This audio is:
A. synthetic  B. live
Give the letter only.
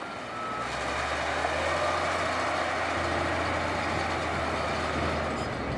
B